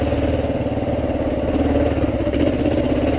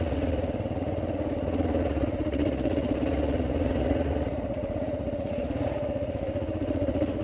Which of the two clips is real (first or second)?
first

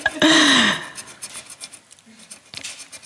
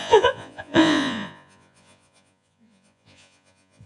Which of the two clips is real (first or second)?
first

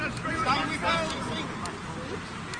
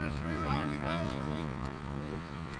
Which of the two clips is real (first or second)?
first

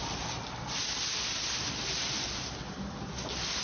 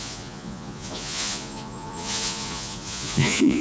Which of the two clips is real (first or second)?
first